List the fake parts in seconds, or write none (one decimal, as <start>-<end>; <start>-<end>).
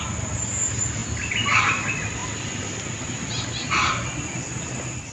none